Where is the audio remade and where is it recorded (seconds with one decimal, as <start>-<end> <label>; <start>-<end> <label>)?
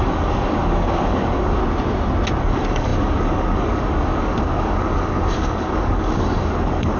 0.0-1.6 remade; 1.6-2.4 recorded; 2.4-7.0 remade